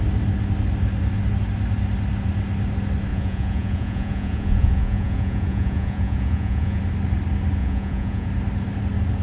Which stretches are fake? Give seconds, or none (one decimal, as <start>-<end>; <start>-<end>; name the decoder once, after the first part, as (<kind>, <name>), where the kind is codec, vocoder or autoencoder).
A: 3.1-6.8 (vocoder, Vocos); 7.6-8.3